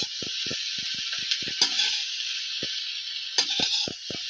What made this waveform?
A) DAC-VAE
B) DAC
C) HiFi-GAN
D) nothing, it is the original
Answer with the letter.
D